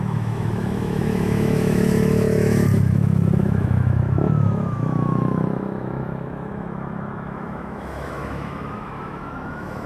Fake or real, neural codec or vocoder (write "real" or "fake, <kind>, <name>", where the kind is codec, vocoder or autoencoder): fake, autoencoder, DAC-VAE